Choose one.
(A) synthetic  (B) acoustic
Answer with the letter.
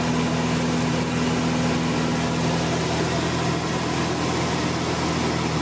B